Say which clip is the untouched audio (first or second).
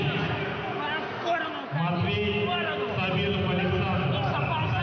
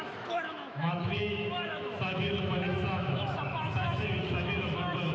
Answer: first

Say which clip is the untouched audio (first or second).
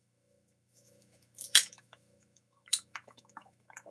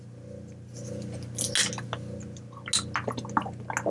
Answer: second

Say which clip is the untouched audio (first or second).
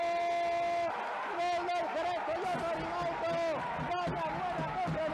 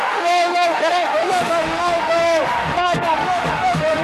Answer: first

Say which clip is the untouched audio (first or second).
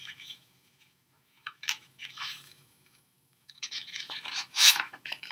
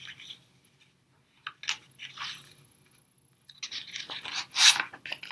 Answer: second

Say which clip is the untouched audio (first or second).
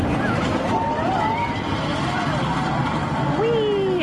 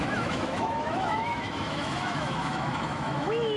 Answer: first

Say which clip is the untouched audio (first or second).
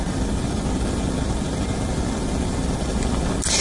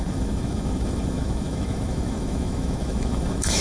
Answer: first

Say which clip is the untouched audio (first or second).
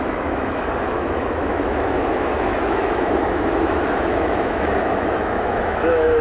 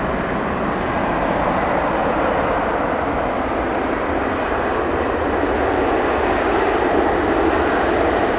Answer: second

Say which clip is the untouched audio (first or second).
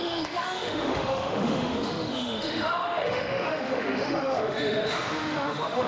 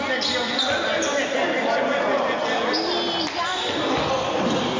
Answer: second